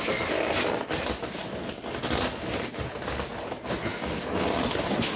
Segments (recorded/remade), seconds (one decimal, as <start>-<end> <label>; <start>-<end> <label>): 0.0-5.2 recorded